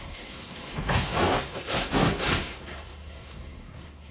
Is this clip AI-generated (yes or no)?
yes